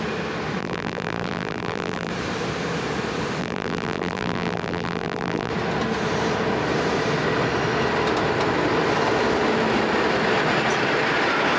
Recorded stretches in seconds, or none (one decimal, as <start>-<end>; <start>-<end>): 0.0-0.6; 2.1-3.4; 5.5-11.6